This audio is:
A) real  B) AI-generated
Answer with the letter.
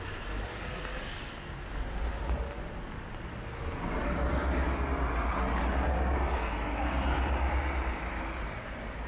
A